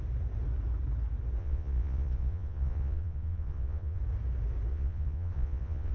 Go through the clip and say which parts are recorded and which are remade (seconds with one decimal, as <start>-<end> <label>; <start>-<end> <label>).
0.0-1.4 recorded; 1.4-4.0 remade; 4.0-4.7 recorded; 4.7-5.9 remade

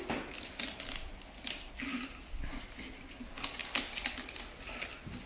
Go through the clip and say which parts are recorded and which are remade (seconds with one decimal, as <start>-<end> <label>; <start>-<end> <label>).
0.0-5.3 recorded

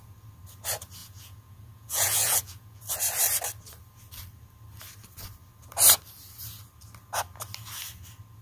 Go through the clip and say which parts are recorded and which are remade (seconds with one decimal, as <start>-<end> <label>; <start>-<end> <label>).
0.0-1.0 recorded; 1.0-2.9 remade; 2.9-8.4 recorded

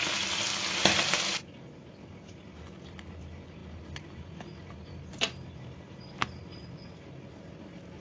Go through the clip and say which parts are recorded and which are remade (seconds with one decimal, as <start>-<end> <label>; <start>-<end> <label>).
0.0-8.0 recorded